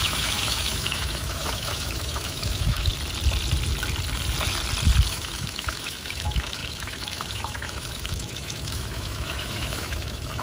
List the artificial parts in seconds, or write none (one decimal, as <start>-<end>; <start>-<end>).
0.0-2.9; 5.1-10.4